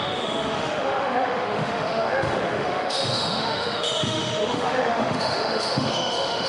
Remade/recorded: remade